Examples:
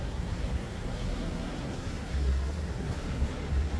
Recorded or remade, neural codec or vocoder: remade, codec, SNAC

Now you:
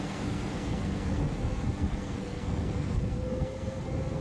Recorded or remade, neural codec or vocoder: remade, codec, SNAC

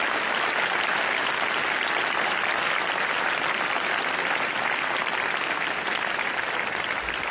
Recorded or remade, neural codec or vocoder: recorded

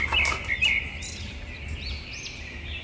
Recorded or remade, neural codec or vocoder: recorded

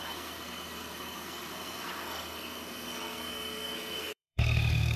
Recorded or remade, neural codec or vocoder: remade, codec, SNAC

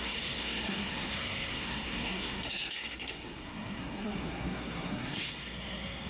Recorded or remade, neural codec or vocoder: remade, codec, SNAC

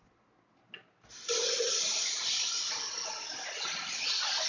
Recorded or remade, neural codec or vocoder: recorded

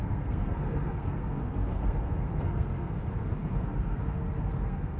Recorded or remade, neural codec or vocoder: remade, codec, SNAC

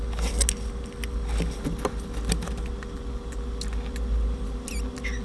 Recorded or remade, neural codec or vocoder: recorded